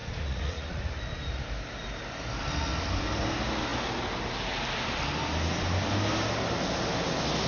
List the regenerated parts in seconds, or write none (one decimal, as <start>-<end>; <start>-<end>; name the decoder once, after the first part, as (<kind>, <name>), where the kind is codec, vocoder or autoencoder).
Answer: 0.0-1.0 (vocoder, Vocos)